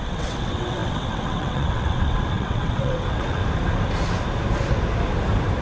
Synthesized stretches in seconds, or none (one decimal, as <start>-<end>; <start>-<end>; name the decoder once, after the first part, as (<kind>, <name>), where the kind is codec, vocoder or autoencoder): 0.0-3.4 (vocoder, WaveNeXt)